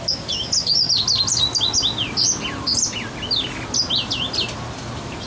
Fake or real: real